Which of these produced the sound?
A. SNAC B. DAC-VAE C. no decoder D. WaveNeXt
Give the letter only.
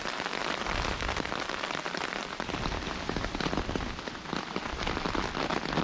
C